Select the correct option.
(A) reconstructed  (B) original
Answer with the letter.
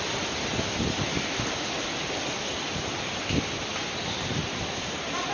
B